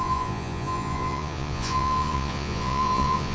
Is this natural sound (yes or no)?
no